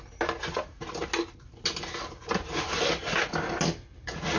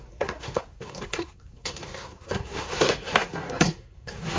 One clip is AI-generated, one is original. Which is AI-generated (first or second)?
second